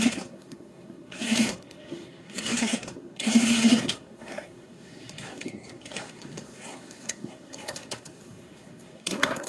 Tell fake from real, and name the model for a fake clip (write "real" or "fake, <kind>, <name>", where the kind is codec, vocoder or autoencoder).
fake, codec, SNAC